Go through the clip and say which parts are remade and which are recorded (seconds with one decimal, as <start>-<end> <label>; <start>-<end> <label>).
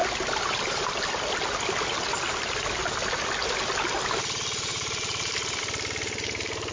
0.0-4.7 recorded; 4.7-5.6 remade; 5.6-6.7 recorded